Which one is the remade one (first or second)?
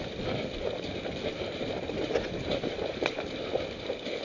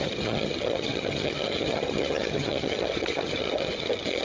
second